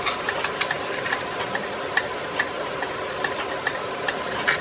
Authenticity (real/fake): real